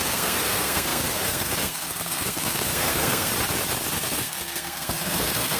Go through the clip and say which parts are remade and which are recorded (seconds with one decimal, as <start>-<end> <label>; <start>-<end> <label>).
0.0-3.3 remade; 3.3-4.0 recorded; 4.0-5.6 remade